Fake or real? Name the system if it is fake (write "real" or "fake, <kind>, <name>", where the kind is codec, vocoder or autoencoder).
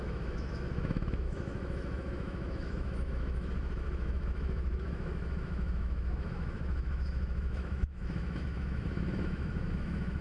fake, autoencoder, DAC-VAE